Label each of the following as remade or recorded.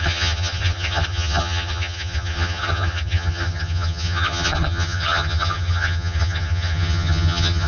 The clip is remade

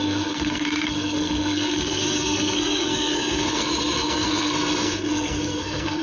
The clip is remade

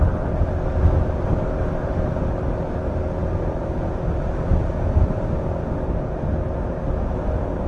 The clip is recorded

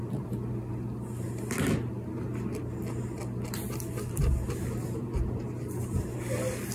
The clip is recorded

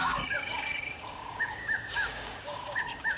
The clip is remade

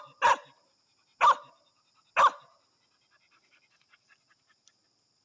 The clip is recorded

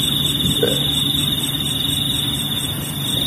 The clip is recorded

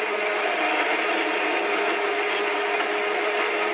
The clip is recorded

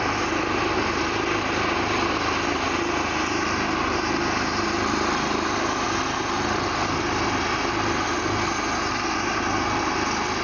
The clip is recorded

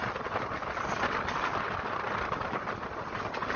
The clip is recorded